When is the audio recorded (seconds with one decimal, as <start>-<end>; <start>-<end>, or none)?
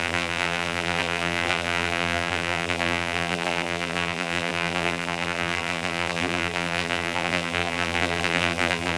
none